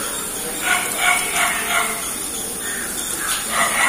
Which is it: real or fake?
real